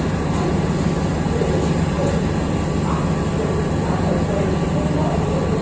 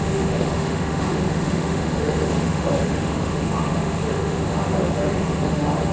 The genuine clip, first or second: first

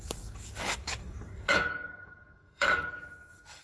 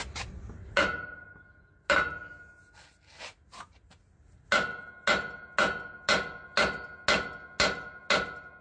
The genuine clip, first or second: second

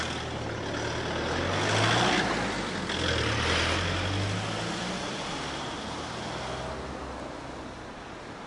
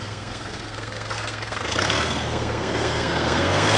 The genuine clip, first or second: first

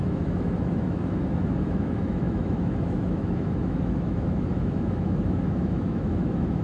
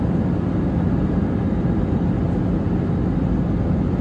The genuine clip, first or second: second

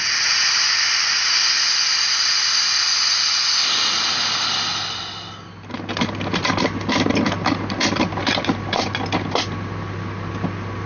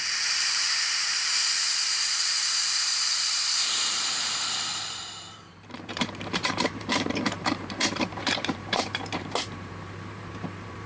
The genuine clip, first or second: first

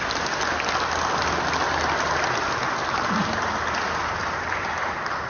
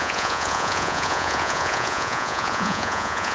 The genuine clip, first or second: first